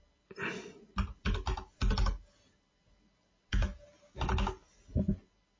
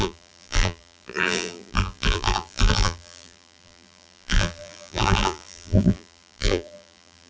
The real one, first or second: first